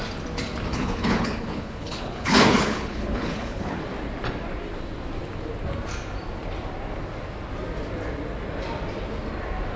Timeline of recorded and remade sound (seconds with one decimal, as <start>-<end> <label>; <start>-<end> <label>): 0.0-0.7 recorded; 0.7-3.8 remade; 3.8-9.8 recorded